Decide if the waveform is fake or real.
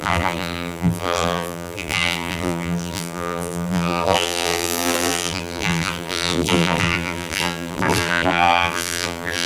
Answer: fake